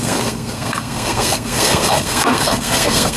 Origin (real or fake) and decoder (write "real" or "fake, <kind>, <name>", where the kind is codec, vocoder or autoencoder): fake, codec, SNAC